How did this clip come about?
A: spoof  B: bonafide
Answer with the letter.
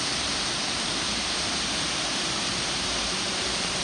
A